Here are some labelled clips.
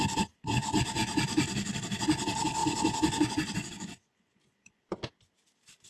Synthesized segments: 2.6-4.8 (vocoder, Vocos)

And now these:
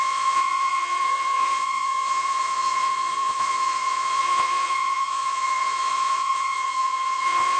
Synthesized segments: 0.0-7.6 (vocoder, Vocos)

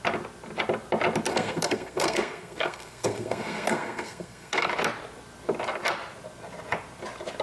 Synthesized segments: 1.3-4.7 (codec, SNAC)

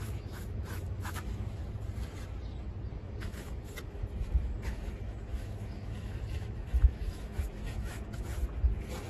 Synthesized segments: 0.0-1.6 (autoencoder, DAC-VAE); 2.9-8.3

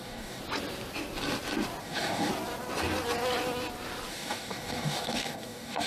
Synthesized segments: 0.0-0.4 (codec, DAC); 1.8-2.3; 4.1-5.9